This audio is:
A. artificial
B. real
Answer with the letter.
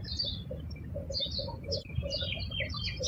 B